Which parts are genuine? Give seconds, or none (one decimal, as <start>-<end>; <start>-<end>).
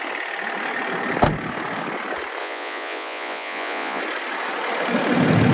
0.0-2.4; 4.0-5.5